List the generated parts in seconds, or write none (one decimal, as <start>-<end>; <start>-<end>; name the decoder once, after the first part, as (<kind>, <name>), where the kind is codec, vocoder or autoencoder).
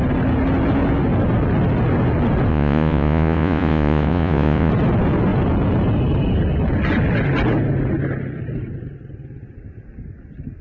2.5-4.7 (vocoder, Vocos)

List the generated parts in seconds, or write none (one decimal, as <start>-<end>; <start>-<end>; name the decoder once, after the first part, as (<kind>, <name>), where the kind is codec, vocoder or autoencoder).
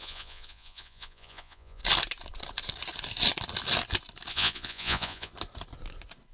0.0-1.8 (vocoder, Vocos); 4.3-5.3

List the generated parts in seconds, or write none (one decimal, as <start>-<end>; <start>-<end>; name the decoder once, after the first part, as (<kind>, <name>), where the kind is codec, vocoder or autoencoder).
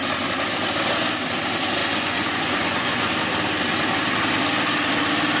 1.8-3.1 (vocoder, Vocos)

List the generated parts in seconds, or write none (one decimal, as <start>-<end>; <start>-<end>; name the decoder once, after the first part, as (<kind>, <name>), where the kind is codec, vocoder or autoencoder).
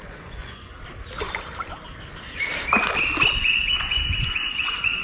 0.0-0.7 (vocoder, Vocos); 3.3-5.0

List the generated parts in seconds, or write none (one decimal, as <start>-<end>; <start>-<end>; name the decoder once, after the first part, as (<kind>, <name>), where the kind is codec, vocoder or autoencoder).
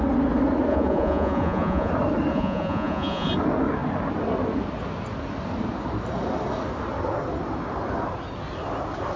0.7-1.9 (vocoder, Vocos); 2.3-3.3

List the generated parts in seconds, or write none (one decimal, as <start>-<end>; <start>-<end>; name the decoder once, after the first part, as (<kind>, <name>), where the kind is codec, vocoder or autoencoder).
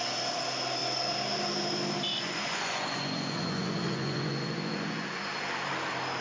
2.1-5.2 (vocoder, Vocos)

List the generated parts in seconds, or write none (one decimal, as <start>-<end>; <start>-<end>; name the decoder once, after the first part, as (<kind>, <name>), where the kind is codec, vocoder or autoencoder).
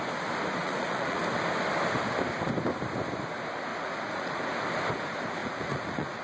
0.6-1.2 (vocoder, Vocos); 3.7-4.4; 5.4-6.2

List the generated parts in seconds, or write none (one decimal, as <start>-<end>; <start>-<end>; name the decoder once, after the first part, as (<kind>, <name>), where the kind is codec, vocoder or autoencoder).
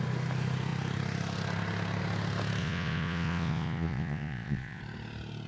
2.6-4.8 (vocoder, Vocos)